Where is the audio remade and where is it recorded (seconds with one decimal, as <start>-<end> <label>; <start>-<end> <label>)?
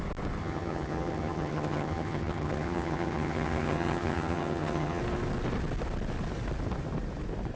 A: 0.0-0.4 recorded; 0.4-5.0 remade; 5.0-7.6 recorded